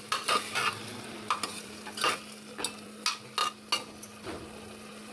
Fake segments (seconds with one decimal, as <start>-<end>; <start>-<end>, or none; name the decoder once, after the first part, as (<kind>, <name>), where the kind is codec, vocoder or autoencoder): none